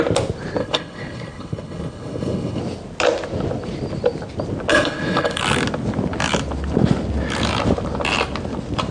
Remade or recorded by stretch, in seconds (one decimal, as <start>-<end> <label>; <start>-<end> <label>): 0.0-0.6 recorded; 0.6-2.6 remade; 2.6-4.7 recorded; 4.7-5.4 remade; 5.4-8.9 recorded